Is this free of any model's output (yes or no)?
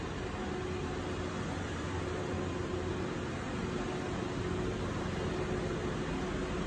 yes